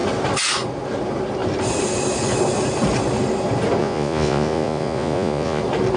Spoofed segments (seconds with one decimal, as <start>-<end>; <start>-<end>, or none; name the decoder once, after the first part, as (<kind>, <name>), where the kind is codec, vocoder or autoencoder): 3.8-5.6 (vocoder, Vocos)